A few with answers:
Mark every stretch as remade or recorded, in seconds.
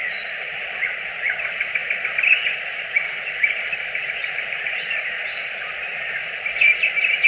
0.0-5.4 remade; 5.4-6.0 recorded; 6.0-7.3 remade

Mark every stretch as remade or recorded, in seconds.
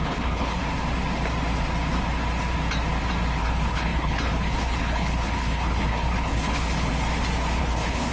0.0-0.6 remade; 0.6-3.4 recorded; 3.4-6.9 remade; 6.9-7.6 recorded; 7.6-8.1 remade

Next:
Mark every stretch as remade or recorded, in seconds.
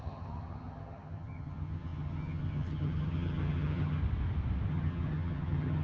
0.0-4.0 remade; 4.0-4.7 recorded; 4.7-5.8 remade